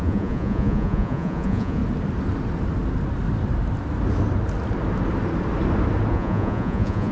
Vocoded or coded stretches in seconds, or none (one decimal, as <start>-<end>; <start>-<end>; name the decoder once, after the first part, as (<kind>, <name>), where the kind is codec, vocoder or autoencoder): 0.0-1.8 (vocoder, Vocos); 6.1-7.1